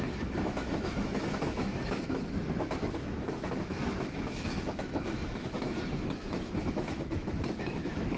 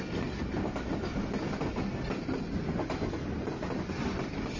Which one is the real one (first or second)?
second